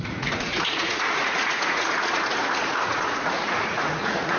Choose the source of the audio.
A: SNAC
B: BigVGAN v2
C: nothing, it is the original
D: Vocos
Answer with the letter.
D